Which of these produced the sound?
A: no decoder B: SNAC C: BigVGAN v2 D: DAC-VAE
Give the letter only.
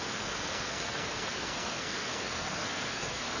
B